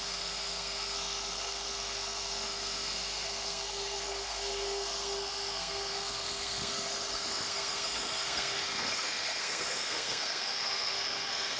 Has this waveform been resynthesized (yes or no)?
yes